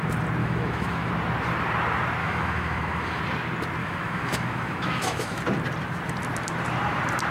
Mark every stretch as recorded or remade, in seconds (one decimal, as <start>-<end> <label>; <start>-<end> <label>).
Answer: 0.0-0.4 recorded; 0.4-1.1 remade; 1.1-2.2 recorded; 2.2-3.2 remade; 3.2-3.8 recorded; 3.8-5.4 remade; 5.4-7.3 recorded